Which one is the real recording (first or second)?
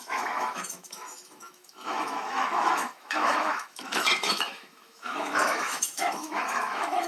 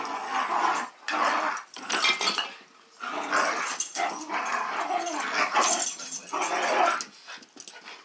second